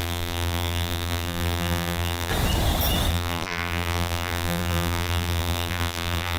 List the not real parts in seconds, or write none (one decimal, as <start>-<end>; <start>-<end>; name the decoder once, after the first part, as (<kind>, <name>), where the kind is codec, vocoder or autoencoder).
0.0-2.3 (vocoder, BigVGAN v2); 3.1-6.4